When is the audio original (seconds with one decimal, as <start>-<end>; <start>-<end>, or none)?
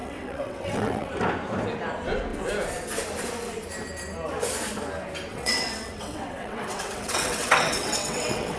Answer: 1.1-5.3